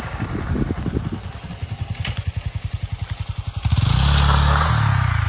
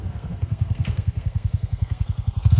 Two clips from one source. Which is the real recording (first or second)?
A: first